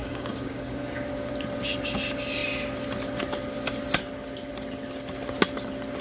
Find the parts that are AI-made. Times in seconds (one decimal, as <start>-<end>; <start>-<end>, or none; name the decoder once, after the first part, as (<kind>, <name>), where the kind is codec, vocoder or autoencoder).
0.0-0.8 (codec, DAC)